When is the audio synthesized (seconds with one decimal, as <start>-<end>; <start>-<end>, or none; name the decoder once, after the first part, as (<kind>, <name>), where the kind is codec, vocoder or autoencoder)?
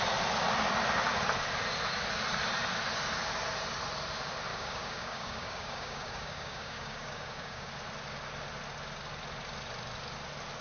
4.5-7.7 (codec, DAC)